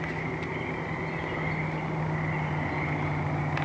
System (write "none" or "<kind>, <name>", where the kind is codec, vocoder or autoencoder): none